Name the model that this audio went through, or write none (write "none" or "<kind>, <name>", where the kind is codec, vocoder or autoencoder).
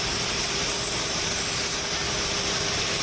none